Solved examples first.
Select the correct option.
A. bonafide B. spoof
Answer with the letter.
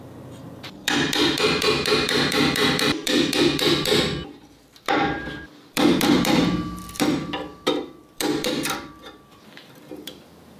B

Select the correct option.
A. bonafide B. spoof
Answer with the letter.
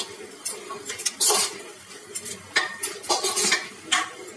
A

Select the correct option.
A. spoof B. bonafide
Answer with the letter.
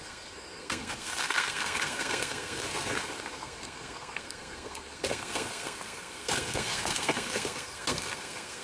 A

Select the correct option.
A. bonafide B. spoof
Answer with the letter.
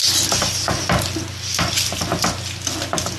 A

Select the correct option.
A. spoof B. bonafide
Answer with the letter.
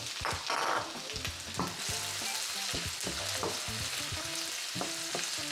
B